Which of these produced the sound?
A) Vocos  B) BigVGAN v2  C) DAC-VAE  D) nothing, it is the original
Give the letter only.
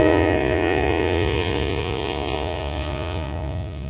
A